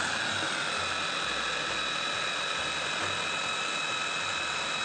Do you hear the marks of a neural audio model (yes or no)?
no